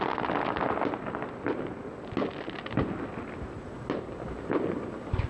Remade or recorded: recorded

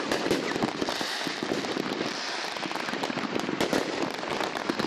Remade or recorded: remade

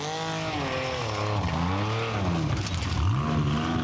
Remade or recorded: recorded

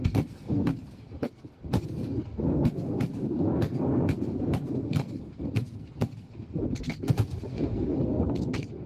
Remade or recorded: remade